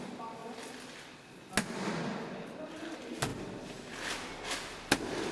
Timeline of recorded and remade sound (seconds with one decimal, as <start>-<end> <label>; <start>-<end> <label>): 0.0-5.3 recorded